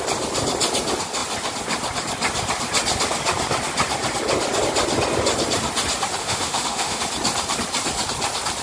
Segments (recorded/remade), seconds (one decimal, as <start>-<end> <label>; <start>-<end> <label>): 0.0-6.2 recorded; 6.2-7.0 remade; 7.0-8.6 recorded